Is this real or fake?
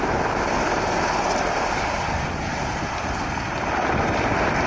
real